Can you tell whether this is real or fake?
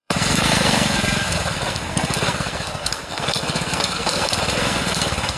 fake